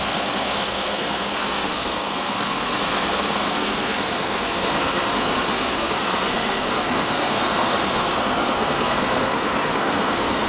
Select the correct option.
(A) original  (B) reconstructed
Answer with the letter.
B